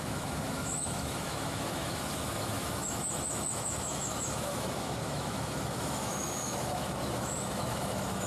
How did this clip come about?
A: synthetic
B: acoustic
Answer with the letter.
A